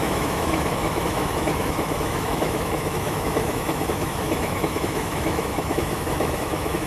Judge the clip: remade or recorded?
remade